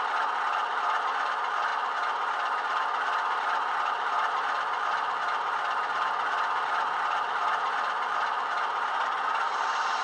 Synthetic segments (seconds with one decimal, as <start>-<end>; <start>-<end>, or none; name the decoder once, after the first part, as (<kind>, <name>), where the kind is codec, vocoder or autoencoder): none